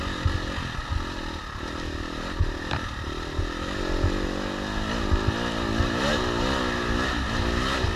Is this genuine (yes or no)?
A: yes